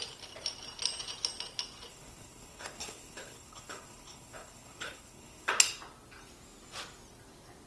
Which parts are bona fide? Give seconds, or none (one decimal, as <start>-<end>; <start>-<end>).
0.0-1.9; 5.5-7.7